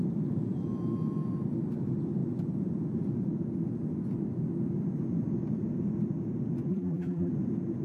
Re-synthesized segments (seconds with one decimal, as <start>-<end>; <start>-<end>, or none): 6.7-7.3